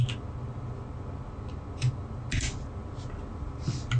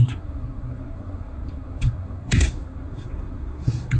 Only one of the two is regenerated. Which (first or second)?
second